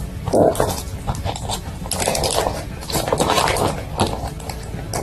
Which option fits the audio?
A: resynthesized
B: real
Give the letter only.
A